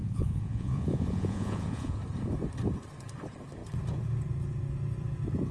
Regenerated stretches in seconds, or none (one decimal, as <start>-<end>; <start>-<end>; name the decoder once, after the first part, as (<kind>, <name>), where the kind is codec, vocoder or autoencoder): 0.0-2.0 (vocoder, Vocos)